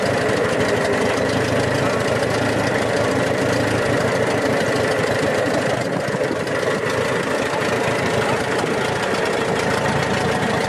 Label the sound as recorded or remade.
recorded